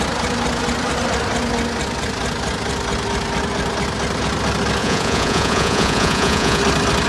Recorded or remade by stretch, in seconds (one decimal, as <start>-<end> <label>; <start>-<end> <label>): 0.0-4.8 recorded; 4.8-6.6 remade; 6.6-7.1 recorded